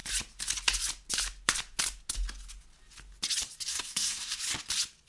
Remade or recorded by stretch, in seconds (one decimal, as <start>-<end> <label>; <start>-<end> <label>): 0.0-3.7 recorded; 3.7-4.4 remade; 4.4-5.1 recorded